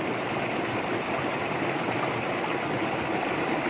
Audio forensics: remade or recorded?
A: recorded